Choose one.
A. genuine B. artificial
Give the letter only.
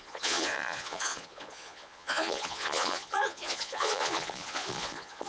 B